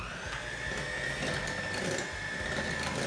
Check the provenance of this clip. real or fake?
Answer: real